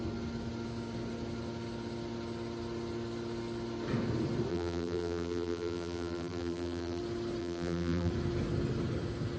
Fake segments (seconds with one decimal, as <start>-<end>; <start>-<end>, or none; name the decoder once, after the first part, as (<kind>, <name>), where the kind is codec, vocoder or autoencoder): 4.5-7.0 (vocoder, BigVGAN v2); 7.4-8.1